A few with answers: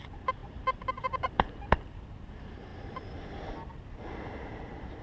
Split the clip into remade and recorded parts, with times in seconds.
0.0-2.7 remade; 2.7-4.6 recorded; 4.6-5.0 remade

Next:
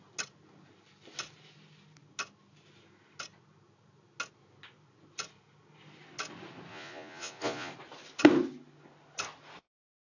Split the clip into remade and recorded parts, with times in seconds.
0.0-6.7 recorded; 6.7-7.7 remade; 7.7-10.0 recorded

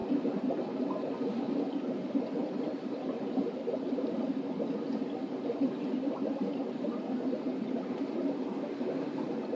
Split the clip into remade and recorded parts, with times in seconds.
0.0-9.5 remade

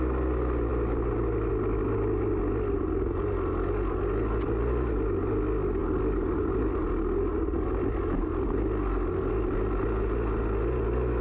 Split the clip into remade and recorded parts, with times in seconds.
0.0-11.2 recorded

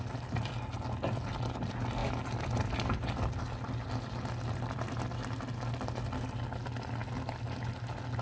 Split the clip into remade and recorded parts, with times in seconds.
0.0-8.2 recorded

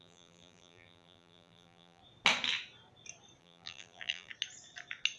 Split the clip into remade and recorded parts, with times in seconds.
0.0-2.0 remade; 2.0-3.4 recorded; 3.4-4.3 remade; 4.3-5.2 recorded

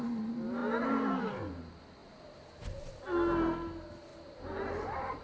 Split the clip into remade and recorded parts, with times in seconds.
0.0-2.0 recorded; 2.0-2.9 remade; 2.9-4.1 recorded; 4.1-5.2 remade

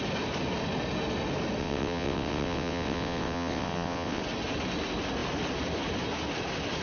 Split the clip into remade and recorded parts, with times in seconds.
0.0-1.6 recorded; 1.6-4.2 remade; 4.2-6.8 recorded